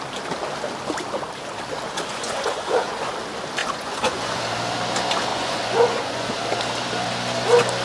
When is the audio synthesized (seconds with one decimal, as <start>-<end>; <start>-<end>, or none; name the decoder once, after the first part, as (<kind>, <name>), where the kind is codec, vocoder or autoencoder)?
2.1-3.1 (vocoder, Vocos); 3.6-4.4; 5.3-6.3